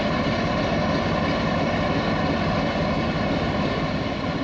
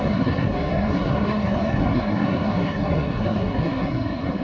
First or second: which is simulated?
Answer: second